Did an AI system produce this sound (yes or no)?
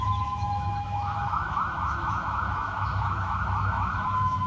yes